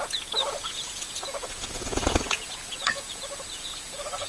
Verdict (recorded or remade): remade